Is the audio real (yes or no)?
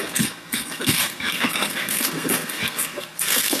no